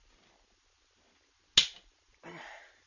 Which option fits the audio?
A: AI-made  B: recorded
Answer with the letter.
B